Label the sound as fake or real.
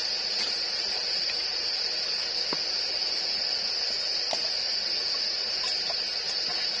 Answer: real